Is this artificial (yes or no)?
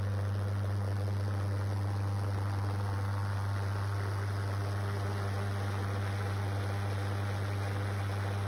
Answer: no